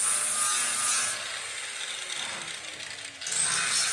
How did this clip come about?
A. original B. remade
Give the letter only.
A